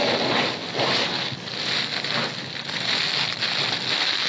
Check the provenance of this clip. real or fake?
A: real